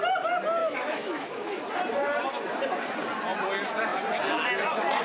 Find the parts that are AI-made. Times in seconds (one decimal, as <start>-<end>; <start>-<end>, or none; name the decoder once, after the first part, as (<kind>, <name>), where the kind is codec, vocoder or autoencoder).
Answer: 0.6-1.7 (autoencoder, DAC-VAE)